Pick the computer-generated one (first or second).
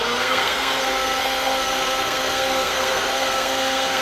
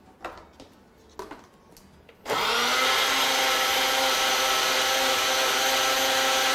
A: first